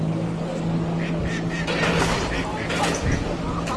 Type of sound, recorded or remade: recorded